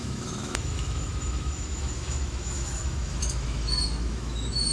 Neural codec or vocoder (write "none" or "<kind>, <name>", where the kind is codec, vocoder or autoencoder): autoencoder, DAC-VAE